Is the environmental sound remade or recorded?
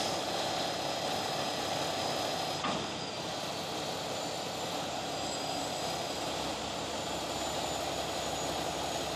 recorded